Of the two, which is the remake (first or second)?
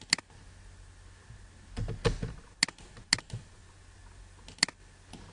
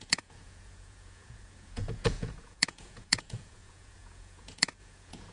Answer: second